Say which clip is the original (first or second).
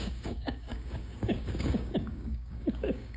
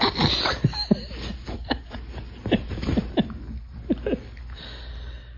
second